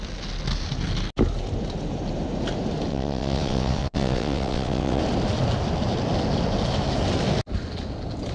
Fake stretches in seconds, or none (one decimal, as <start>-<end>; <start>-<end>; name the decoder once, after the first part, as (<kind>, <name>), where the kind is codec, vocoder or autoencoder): 2.9-5.0 (vocoder, WaveNeXt)